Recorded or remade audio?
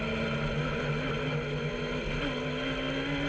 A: recorded